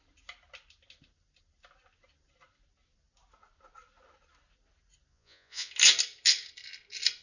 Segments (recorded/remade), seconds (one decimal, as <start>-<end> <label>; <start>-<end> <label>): 0.0-5.1 recorded; 5.1-5.7 remade; 5.7-7.2 recorded